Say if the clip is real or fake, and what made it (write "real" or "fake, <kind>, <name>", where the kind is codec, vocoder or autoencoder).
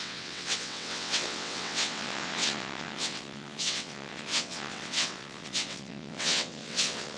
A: fake, vocoder, WaveNeXt